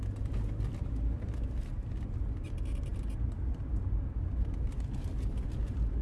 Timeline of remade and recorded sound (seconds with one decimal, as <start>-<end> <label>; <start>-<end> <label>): 0.0-6.0 recorded

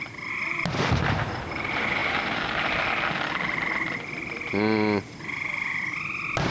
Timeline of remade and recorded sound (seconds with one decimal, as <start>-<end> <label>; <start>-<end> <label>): 0.0-6.5 recorded